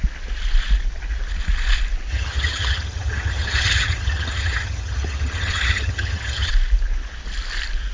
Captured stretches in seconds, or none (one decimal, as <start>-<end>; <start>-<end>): 0.0-2.1; 6.5-7.9